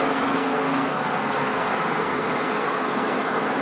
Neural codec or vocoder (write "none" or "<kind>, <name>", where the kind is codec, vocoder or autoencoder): codec, SNAC